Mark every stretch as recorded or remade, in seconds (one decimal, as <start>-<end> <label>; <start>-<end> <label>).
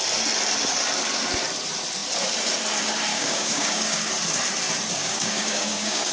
0.0-3.1 recorded; 3.1-4.1 remade; 4.1-5.0 recorded; 5.0-6.1 remade